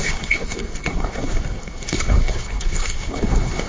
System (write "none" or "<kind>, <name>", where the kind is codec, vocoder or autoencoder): codec, SNAC